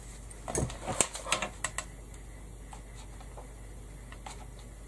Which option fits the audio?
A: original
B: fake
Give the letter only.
A